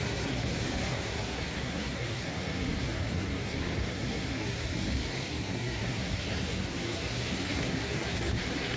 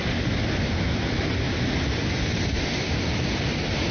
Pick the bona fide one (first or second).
second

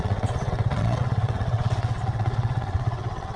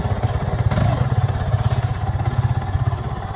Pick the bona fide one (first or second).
second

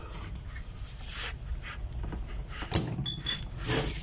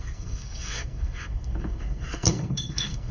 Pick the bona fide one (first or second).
first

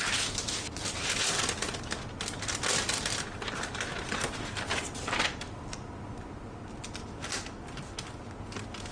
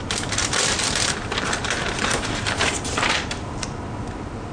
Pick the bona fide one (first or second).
first